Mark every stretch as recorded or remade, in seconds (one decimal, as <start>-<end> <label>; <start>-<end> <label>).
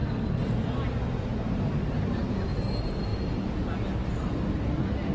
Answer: 0.0-5.1 recorded